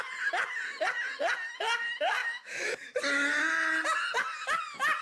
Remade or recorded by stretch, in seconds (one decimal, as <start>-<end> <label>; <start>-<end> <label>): 0.0-2.2 recorded; 2.2-3.0 remade; 3.0-5.0 recorded